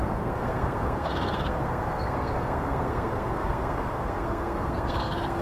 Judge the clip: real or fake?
fake